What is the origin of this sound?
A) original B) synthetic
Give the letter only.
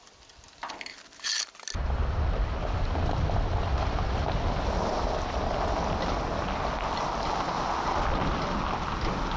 A